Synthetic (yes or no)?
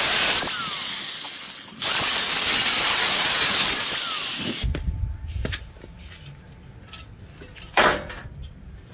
no